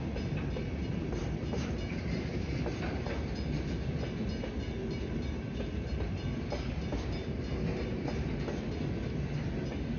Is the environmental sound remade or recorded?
recorded